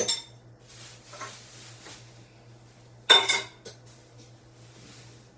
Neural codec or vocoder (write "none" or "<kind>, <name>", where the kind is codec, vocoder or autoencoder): none